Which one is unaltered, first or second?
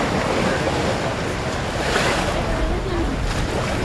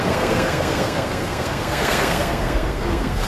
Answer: first